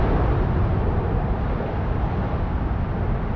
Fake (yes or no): no